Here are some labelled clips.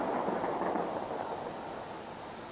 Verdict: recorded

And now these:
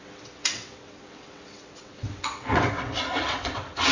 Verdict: remade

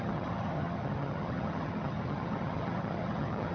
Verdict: remade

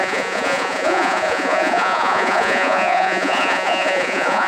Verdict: remade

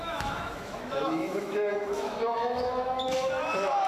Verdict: remade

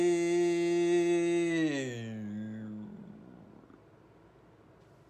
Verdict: recorded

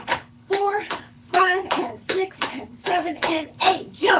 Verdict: remade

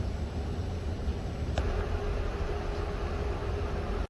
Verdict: recorded